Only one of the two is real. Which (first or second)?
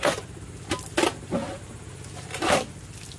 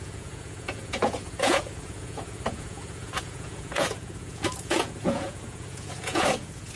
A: first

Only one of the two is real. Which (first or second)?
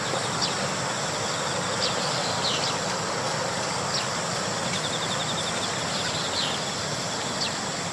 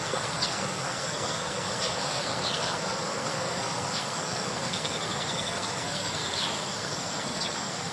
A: first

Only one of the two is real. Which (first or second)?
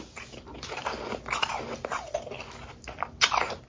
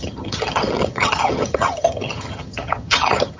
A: first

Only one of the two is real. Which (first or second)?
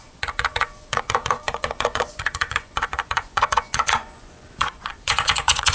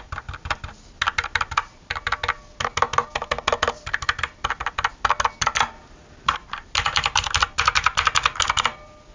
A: second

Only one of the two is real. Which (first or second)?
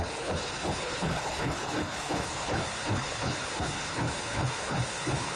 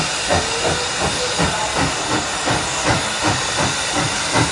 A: second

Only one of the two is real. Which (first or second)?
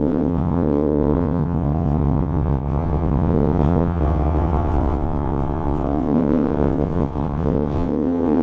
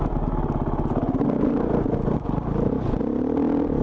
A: second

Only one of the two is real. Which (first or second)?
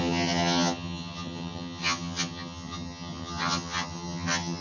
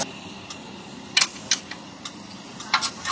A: second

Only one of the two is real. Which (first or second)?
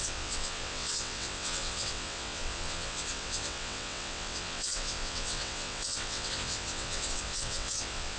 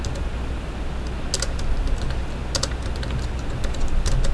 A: second